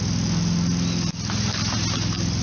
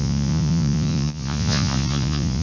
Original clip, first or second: first